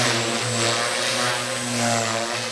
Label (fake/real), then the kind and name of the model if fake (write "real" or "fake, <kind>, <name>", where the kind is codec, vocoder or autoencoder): real